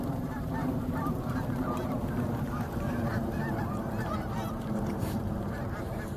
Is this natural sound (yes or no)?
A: no